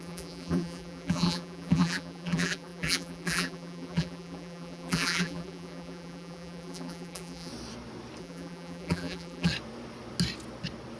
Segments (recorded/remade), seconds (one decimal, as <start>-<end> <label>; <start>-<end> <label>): 0.0-7.5 remade; 7.5-8.2 recorded; 8.2-9.5 remade; 9.5-11.0 recorded